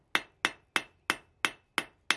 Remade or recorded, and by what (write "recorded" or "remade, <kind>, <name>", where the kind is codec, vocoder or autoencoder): recorded